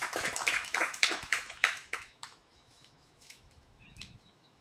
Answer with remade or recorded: remade